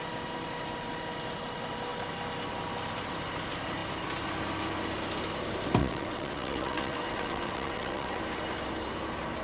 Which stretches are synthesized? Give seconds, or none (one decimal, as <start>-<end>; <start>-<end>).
5.8-8.2